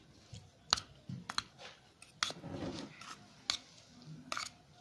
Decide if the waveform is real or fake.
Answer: real